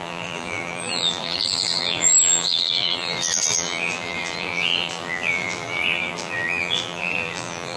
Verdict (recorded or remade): remade